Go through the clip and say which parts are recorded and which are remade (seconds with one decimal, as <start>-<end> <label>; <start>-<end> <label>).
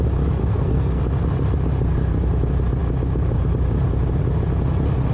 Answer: 0.0-0.4 recorded; 0.4-1.0 remade; 1.0-5.1 recorded